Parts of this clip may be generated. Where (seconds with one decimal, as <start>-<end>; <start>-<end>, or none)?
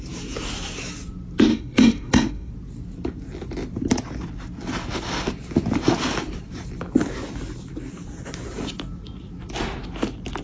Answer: 1.5-2.5